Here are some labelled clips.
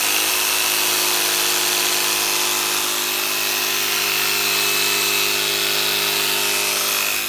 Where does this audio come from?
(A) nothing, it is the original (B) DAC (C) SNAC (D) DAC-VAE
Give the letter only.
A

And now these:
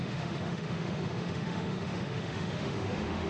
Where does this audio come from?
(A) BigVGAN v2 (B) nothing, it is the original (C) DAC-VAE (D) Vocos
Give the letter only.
C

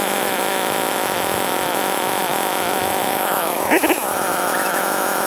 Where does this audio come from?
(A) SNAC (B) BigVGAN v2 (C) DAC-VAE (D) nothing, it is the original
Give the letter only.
C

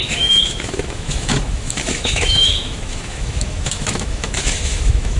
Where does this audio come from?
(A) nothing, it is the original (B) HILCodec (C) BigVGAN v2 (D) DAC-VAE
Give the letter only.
D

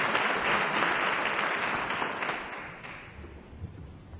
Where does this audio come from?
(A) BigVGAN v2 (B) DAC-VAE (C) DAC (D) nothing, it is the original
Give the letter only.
D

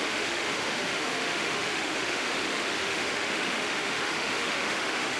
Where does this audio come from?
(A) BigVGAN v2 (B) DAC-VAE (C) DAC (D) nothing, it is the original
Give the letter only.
B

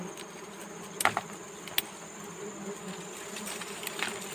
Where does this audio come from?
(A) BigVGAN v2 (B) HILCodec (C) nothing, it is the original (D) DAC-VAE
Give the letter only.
C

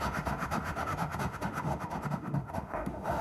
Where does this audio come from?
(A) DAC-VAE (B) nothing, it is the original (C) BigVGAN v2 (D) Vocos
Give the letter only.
A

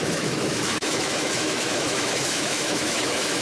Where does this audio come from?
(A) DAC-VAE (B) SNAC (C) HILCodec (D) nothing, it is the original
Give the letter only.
A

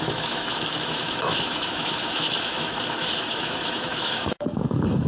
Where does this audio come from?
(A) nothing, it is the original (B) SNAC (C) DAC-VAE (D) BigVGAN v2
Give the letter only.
C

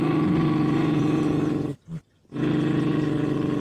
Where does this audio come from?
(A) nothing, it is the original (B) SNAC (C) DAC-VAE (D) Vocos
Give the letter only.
A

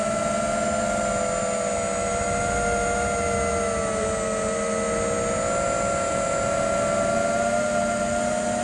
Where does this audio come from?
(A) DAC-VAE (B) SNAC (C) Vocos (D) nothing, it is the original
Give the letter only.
D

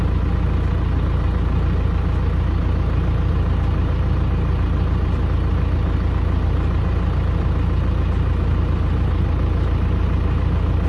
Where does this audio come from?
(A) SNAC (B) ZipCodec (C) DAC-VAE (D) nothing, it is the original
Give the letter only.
D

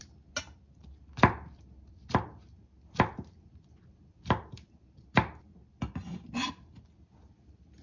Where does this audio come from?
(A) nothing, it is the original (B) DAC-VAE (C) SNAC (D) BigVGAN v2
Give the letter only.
A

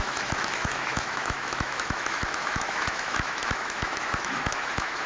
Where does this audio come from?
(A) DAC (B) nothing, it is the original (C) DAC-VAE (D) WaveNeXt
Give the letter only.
C